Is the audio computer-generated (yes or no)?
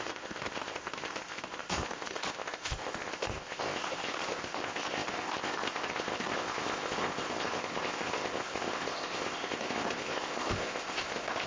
yes